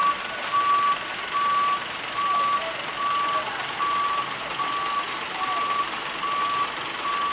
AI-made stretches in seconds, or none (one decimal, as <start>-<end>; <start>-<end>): none